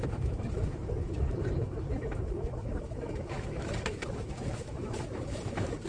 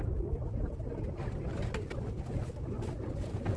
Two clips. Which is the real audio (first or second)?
second